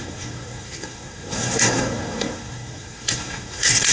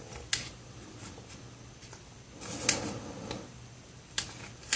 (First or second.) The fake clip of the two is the first